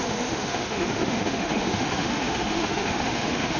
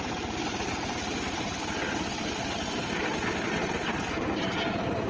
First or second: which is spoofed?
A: first